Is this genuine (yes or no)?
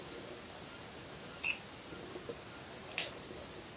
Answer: yes